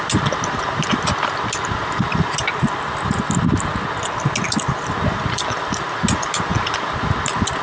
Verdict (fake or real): real